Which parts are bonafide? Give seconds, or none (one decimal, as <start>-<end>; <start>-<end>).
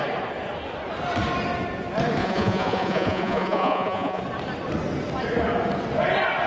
0.0-2.2; 4.2-6.5